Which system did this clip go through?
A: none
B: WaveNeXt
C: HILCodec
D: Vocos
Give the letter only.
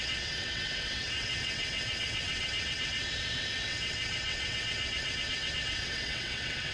B